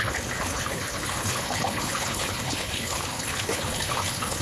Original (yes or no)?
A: no